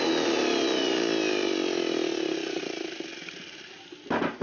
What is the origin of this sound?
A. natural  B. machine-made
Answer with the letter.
A